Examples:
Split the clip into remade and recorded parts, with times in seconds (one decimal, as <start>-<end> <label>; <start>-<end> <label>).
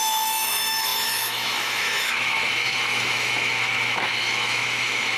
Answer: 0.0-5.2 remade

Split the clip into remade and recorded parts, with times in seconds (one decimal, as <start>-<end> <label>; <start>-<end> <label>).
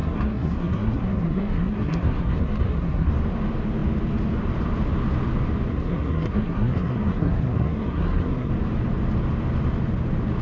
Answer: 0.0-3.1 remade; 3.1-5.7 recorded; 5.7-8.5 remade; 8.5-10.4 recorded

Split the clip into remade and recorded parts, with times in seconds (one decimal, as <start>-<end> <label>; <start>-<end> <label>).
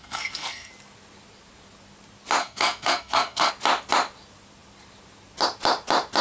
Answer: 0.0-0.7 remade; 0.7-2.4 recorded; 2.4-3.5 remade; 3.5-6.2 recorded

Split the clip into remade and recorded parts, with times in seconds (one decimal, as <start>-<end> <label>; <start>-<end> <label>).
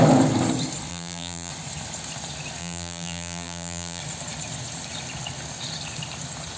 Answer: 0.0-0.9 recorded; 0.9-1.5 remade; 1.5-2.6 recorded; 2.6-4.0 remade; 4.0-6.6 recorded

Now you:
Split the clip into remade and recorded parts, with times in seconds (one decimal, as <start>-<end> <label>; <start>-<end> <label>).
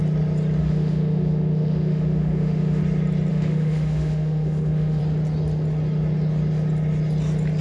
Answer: 0.0-0.6 recorded; 0.6-2.8 remade; 2.8-3.3 recorded; 3.3-5.0 remade; 5.0-7.6 recorded